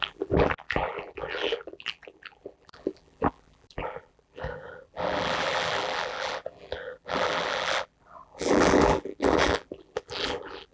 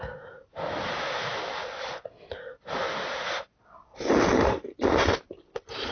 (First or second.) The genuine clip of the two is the second